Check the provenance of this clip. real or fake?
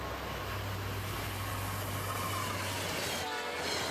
real